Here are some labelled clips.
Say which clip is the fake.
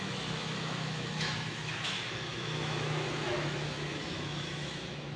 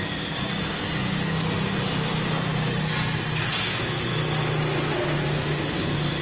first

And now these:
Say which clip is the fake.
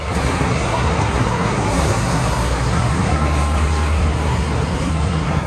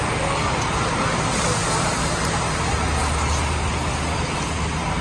first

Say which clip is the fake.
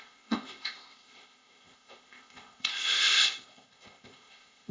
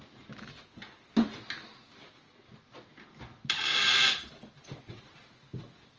first